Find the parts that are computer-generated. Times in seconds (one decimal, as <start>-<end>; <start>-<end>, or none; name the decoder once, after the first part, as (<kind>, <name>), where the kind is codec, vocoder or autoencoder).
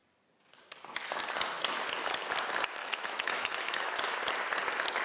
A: 2.8-3.9 (autoencoder, DAC-VAE)